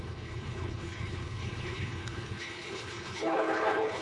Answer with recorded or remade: remade